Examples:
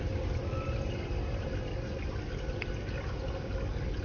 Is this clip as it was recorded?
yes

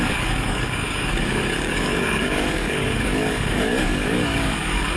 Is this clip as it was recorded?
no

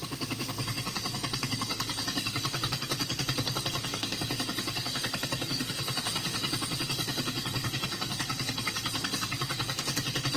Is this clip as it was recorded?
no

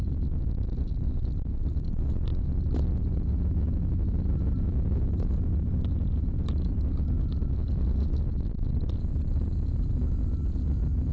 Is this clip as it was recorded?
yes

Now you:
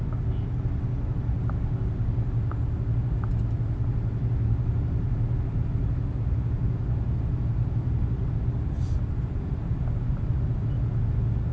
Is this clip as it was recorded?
yes